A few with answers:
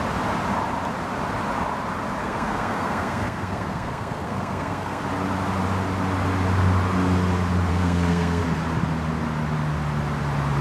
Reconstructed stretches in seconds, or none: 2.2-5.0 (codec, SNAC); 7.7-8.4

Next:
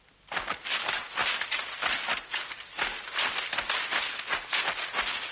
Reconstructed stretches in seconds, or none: none

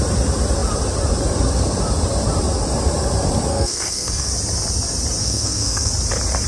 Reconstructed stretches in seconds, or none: 3.5-4.3 (codec, SNAC); 5.2-5.9

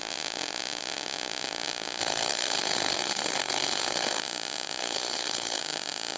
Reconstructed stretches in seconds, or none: 2.0-4.2 (codec, SNAC); 4.8-5.6

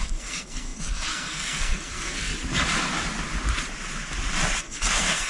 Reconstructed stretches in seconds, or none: 0.0-2.3 (codec, SNAC); 4.6-5.3

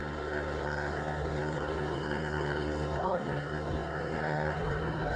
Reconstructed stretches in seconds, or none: 0.0-5.2 (codec, SNAC)

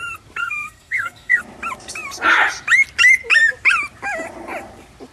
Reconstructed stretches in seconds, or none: 0.4-1.4 (codec, SNAC)

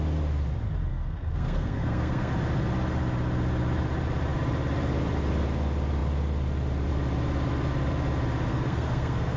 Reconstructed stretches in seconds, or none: 0.9-2.3 (codec, SNAC); 8.5-9.4